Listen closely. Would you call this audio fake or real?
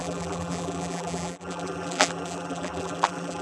fake